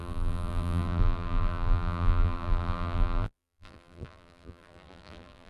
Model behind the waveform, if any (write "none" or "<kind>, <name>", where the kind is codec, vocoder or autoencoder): vocoder, BigVGAN v2